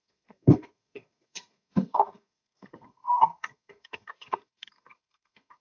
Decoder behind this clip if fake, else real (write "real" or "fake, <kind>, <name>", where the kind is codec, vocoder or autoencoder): fake, codec, SNAC